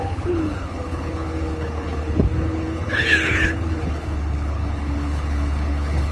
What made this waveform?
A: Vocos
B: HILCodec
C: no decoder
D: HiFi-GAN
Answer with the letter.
B